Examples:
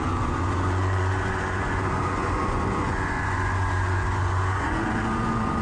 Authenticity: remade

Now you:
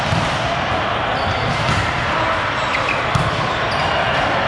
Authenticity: recorded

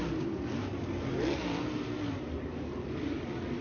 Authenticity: recorded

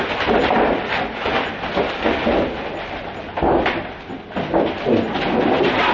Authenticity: recorded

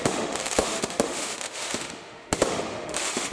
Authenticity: remade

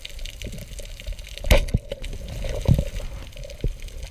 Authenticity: recorded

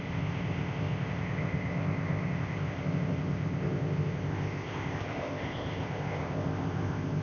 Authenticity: remade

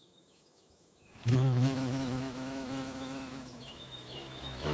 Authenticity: remade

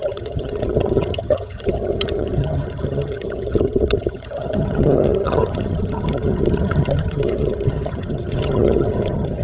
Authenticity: remade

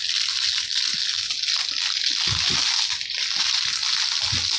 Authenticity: recorded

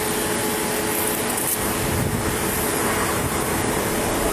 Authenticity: recorded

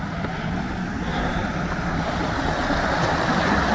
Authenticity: recorded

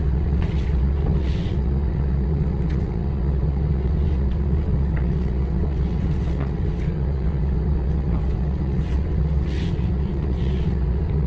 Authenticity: remade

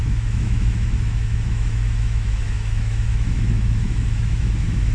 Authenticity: remade